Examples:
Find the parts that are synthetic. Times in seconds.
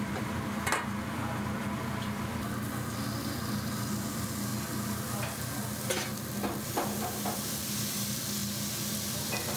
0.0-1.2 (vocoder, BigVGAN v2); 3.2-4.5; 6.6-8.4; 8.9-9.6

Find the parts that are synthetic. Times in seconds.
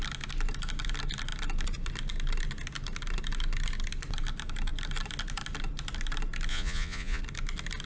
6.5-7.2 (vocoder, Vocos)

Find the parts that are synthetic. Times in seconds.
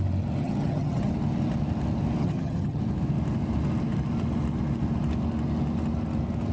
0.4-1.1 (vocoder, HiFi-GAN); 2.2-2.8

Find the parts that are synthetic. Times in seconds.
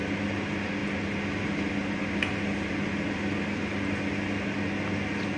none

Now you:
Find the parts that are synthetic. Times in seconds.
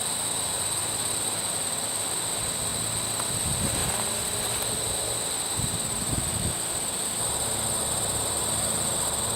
none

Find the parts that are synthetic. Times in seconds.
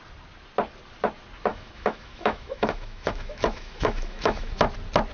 1.5-4.6 (autoencoder, DAC-VAE)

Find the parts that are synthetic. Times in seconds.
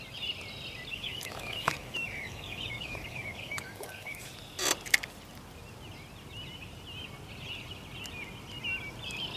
0.9-4.3 (codec, DAC)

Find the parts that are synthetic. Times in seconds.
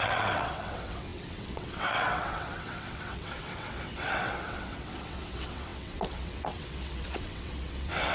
0.0-8.1 (vocoder, WaveNeXt)